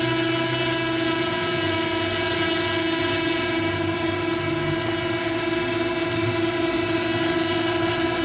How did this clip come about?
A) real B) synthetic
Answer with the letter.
A